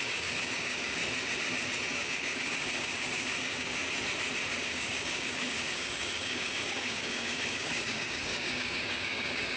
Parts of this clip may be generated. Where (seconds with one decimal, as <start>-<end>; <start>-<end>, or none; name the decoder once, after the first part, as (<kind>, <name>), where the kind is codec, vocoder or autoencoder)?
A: 0.0-1.0 (codec, DAC); 1.9-3.8; 4.5-9.6